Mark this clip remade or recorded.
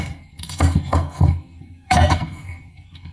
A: remade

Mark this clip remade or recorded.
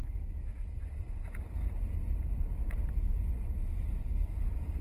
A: recorded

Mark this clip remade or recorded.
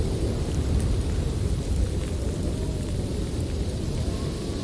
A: recorded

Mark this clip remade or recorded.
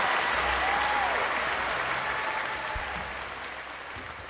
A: recorded